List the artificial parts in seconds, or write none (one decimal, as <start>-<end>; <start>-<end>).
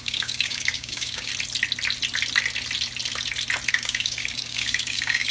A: 0.0-1.3; 3.7-5.3